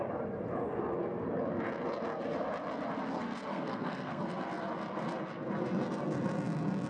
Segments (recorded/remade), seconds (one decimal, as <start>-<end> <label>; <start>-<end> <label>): 0.0-3.5 recorded; 3.5-4.2 remade; 4.2-6.9 recorded

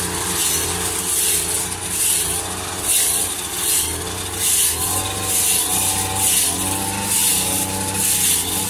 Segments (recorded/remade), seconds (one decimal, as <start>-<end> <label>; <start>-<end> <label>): 0.0-8.7 recorded

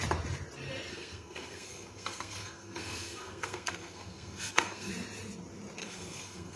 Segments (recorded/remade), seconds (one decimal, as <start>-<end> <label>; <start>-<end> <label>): 0.0-0.9 recorded; 0.9-4.9 remade; 4.9-5.8 recorded; 5.8-6.6 remade

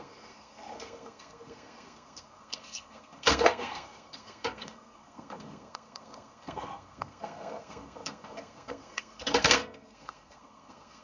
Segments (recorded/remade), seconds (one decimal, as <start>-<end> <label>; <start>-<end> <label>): 0.0-11.0 remade

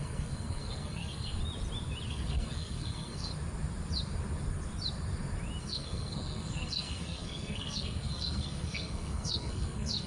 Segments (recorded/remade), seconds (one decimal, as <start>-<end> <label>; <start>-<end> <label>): 0.0-1.4 remade; 1.4-2.1 recorded; 2.1-3.3 remade; 3.3-5.6 recorded; 5.6-10.1 remade

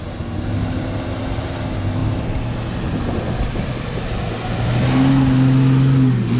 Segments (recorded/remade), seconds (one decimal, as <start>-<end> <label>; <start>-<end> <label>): 0.0-6.4 recorded

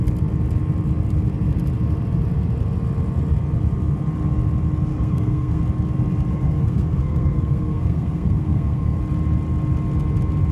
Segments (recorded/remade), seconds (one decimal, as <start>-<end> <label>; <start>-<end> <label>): 0.0-4.9 recorded; 4.9-5.6 remade; 5.6-6.3 recorded; 6.3-9.0 remade; 9.0-10.5 recorded